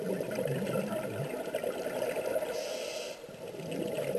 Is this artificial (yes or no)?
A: no